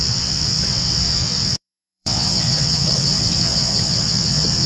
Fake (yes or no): yes